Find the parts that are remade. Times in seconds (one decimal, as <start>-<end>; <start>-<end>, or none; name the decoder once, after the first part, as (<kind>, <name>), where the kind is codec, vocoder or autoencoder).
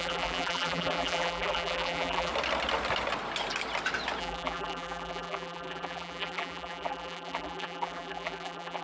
0.0-2.3 (vocoder, BigVGAN v2); 4.2-8.8